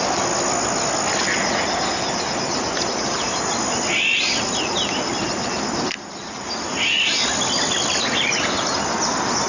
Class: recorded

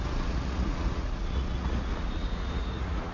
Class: remade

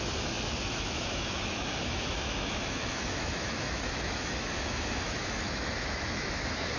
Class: remade